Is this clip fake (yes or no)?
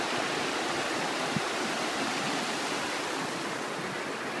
no